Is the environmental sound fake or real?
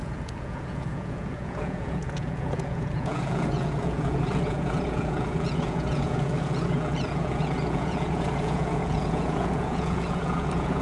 fake